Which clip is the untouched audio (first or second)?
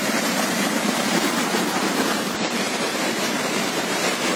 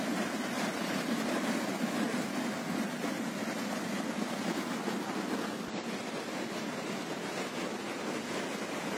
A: second